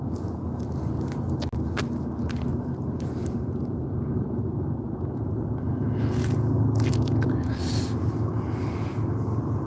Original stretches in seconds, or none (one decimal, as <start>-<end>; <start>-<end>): 0.0-2.5; 4.9-9.7